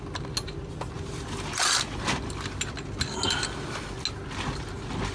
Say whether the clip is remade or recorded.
recorded